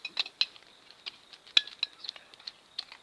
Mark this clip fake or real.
real